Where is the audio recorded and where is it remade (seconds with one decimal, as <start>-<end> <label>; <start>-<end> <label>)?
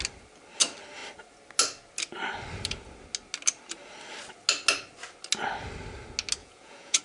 0.0-6.4 recorded; 6.4-7.0 remade